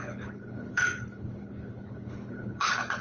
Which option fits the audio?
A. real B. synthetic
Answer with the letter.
B